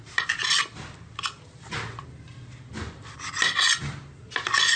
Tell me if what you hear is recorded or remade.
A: recorded